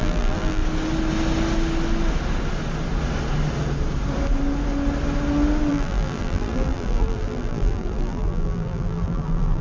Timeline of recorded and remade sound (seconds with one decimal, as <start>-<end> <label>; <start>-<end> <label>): 0.0-0.6 remade; 0.6-5.7 recorded; 5.7-9.6 remade